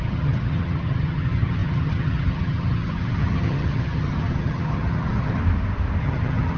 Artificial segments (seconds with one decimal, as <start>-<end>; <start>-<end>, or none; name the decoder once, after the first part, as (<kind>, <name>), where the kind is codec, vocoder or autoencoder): 0.0-5.4 (vocoder, HiFi-GAN); 6.0-6.6